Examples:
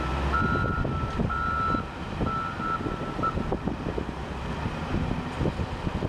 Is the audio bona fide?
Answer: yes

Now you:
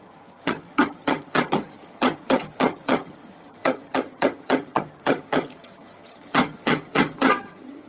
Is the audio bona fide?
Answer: no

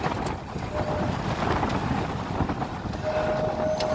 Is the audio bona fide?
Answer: yes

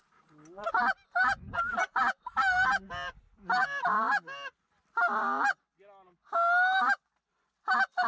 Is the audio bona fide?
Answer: yes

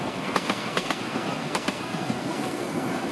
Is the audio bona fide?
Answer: no